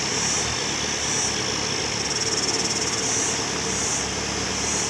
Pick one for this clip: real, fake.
real